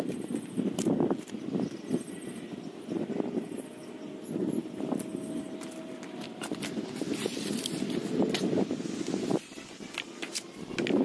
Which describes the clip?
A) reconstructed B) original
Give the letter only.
B